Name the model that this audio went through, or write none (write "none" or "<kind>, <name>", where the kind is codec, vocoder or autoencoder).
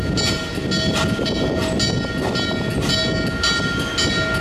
none